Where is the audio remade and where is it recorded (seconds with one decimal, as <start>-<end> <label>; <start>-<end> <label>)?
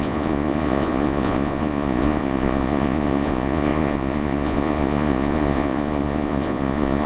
0.0-7.1 remade